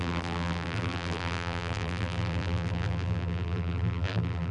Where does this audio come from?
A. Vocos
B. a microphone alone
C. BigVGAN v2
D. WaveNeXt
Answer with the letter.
C